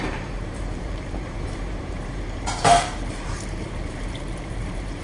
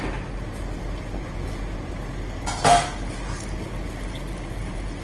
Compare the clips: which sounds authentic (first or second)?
second